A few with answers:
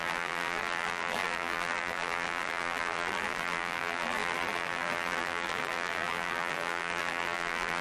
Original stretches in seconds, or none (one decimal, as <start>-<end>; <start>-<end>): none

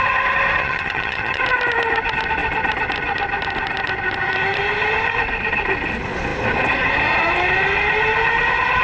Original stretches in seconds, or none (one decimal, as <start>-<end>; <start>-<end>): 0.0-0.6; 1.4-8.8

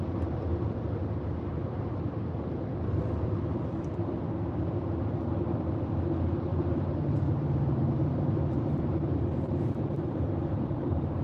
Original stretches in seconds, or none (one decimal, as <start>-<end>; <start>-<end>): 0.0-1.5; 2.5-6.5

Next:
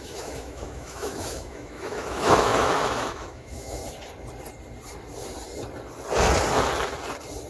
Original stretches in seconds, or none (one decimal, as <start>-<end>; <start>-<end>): 3.8-7.5

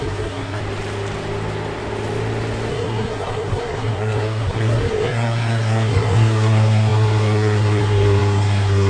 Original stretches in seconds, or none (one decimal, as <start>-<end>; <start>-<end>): 0.6-2.7